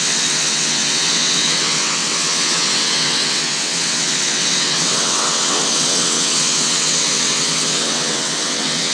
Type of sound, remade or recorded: remade